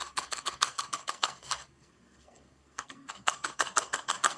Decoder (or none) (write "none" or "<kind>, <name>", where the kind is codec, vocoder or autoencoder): codec, SNAC